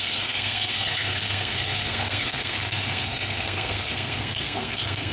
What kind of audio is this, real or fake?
fake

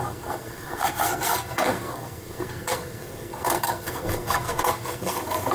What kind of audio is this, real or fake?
fake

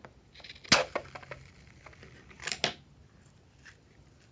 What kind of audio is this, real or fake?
real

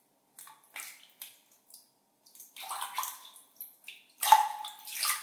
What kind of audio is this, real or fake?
real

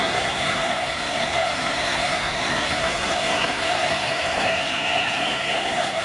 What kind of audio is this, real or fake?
fake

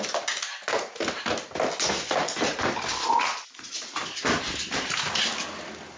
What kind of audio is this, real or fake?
real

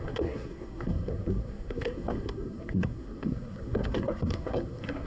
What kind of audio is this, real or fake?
fake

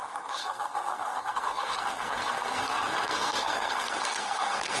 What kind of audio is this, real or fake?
fake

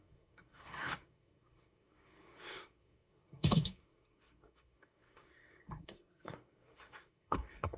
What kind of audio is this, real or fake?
fake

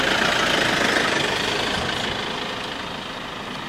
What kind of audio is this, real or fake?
real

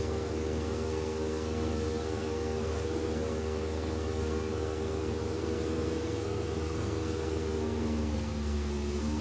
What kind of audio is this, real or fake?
fake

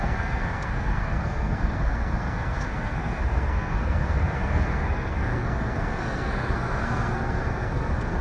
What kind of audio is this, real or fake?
fake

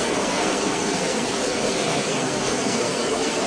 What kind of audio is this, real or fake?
fake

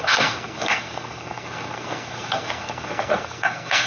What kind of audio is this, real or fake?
fake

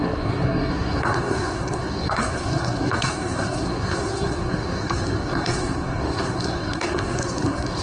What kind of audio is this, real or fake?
fake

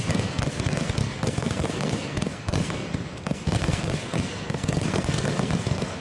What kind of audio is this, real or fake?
fake